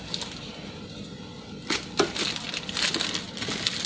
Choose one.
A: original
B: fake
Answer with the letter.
A